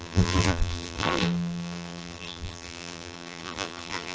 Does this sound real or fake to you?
fake